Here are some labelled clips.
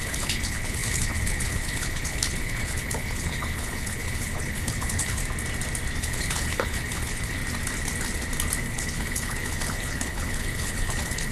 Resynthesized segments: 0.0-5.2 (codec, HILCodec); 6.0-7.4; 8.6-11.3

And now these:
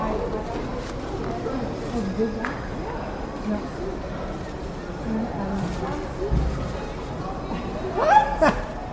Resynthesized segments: none

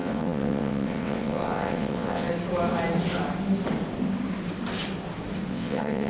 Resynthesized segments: 0.0-2.3 (vocoder, WaveNeXt); 5.5-6.1